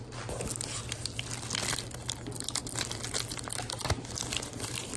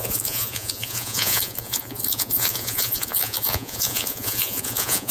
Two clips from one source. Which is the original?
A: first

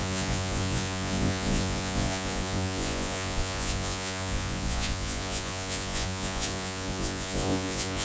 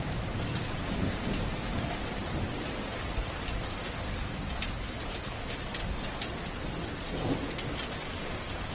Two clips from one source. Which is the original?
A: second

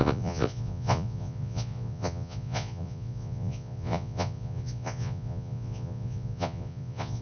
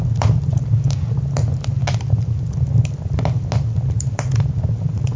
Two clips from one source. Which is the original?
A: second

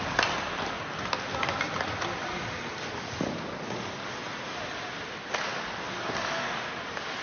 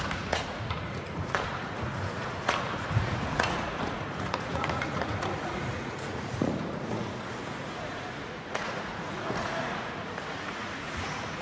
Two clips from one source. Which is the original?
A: first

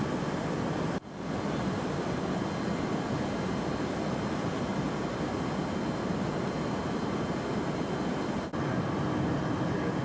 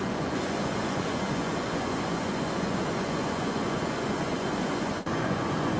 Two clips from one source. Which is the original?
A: first